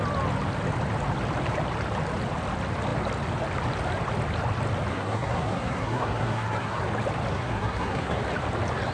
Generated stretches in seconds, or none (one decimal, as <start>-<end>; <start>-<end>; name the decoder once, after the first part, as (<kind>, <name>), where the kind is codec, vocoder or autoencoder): 4.9-6.8 (codec, SNAC); 7.3-8.2